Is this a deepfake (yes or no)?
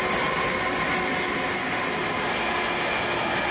no